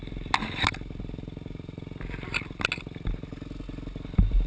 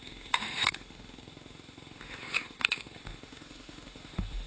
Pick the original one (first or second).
first